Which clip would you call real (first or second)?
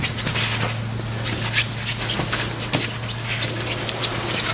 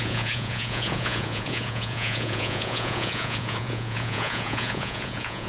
first